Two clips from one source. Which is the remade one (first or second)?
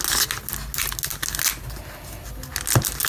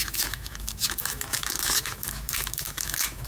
second